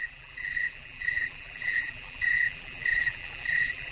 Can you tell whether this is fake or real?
fake